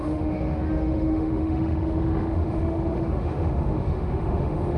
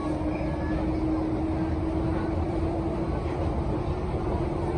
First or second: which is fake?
first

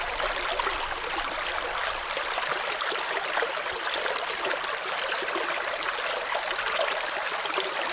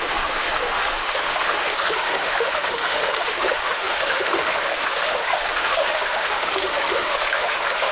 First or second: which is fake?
second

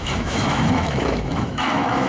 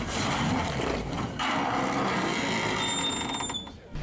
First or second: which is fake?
first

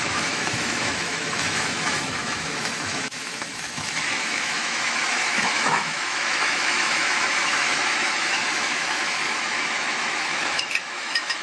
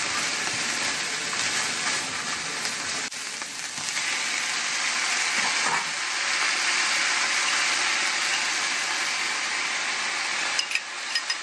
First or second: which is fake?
first